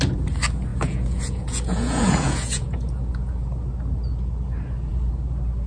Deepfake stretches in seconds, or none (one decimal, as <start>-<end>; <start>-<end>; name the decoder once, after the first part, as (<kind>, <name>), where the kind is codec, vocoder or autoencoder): 0.7-3.6 (vocoder, Vocos)